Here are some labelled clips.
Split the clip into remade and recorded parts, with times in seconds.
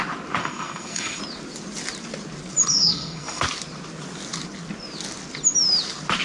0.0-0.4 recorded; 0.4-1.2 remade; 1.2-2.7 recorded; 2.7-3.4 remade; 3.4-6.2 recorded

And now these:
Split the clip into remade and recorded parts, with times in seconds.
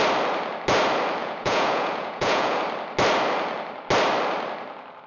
0.0-1.2 recorded; 1.2-2.6 remade; 2.6-5.1 recorded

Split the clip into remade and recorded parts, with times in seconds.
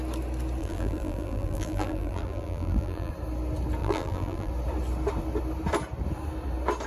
0.0-0.6 recorded; 0.6-3.1 remade; 3.1-3.8 recorded; 3.8-4.5 remade; 4.5-6.9 recorded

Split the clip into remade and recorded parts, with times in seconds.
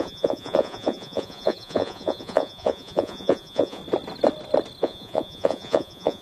0.0-3.8 remade; 3.8-4.8 recorded; 4.8-6.2 remade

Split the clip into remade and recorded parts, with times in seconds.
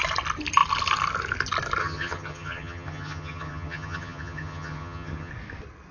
0.0-1.8 recorded; 1.8-5.3 remade; 5.3-5.9 recorded